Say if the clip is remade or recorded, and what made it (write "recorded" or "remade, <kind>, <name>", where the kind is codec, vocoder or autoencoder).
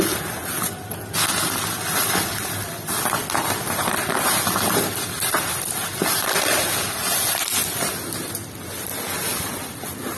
recorded